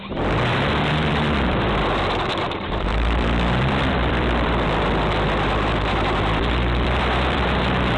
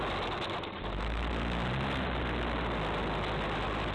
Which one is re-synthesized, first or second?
first